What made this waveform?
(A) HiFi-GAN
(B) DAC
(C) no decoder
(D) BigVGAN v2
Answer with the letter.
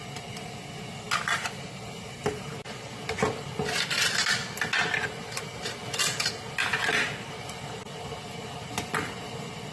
C